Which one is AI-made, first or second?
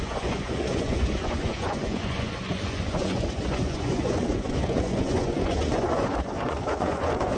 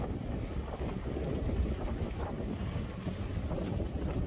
first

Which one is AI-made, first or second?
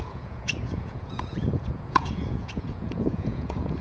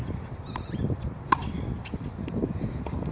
first